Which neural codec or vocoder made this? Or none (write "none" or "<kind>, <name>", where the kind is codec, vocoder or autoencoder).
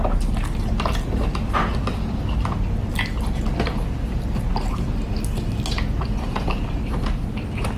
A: none